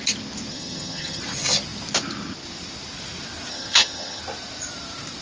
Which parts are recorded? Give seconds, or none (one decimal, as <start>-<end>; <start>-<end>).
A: 0.0-0.5; 1.2-3.5; 4.2-5.2